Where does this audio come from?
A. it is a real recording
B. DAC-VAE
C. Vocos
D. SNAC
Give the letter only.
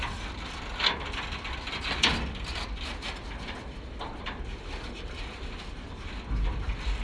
A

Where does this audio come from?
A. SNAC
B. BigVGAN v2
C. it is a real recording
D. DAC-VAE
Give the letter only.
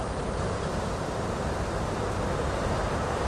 B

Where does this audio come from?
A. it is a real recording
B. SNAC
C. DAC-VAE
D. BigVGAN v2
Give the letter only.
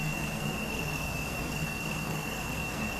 B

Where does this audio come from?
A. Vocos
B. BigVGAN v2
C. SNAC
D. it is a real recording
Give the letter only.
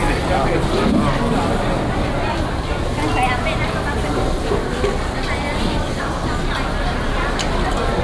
D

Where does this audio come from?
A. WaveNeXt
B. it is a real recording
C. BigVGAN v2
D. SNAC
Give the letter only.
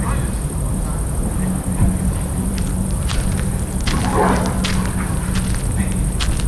B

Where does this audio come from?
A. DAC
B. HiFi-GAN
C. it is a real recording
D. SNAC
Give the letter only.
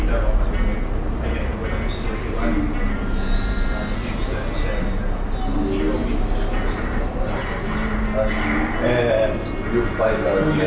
C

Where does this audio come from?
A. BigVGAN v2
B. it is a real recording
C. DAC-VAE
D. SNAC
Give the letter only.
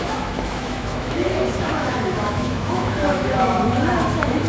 C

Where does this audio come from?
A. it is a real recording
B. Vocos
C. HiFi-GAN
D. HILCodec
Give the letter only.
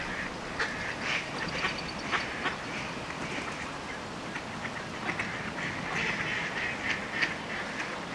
A